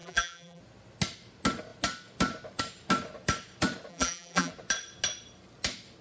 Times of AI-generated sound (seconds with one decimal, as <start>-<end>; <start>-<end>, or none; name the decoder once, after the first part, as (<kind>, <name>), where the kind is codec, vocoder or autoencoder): 0.0-0.6 (vocoder, BigVGAN v2); 3.9-4.5